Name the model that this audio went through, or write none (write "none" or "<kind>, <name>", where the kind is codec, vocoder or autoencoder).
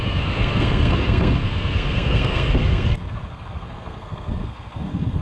codec, SNAC